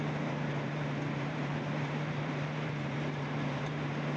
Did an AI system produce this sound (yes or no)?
yes